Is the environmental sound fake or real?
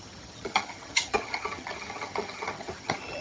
fake